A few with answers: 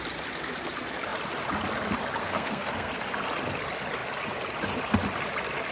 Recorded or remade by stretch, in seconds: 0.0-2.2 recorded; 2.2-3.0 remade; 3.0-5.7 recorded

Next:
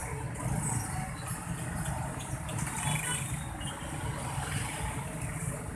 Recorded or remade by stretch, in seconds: 0.0-5.8 recorded

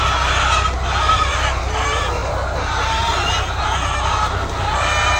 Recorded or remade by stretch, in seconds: 0.0-5.2 recorded

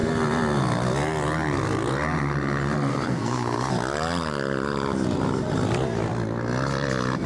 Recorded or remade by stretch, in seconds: 0.0-2.9 recorded; 2.9-3.7 remade; 3.7-7.3 recorded

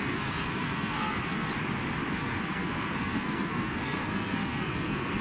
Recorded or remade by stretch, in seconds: 0.0-1.5 remade; 1.5-2.1 recorded; 2.1-5.2 remade

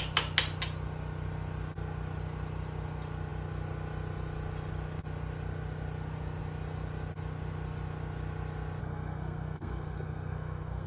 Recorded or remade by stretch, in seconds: 0.0-8.8 recorded; 8.8-10.9 remade